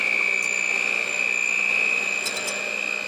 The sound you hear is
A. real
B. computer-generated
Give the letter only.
A